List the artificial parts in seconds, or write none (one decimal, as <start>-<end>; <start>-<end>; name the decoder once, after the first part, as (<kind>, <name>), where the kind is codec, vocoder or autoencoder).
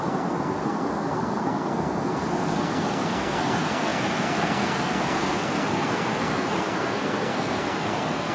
0.0-8.3 (codec, SNAC)